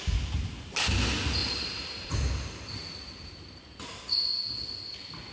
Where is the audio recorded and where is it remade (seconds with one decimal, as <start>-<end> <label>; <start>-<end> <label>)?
0.0-1.4 recorded; 1.4-4.0 remade; 4.0-5.3 recorded